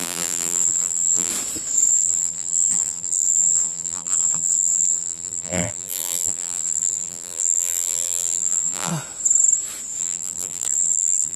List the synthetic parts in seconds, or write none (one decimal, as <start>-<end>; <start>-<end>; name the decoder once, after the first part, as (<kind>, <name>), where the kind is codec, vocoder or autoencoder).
0.0-1.3 (vocoder, BigVGAN v2); 1.9-8.9; 10.0-11.4